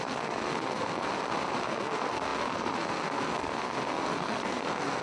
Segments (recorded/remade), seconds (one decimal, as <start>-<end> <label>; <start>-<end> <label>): 0.0-1.1 remade; 1.1-1.7 recorded; 1.7-5.0 remade